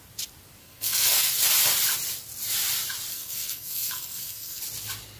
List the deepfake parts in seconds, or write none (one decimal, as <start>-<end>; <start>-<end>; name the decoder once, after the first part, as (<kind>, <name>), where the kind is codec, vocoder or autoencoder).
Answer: 0.6-1.3 (codec, SNAC); 3.1-4.6